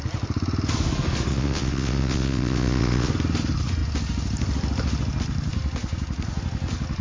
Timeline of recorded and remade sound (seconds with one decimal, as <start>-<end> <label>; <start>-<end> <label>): 0.0-1.3 recorded; 1.3-3.1 remade; 3.1-7.0 recorded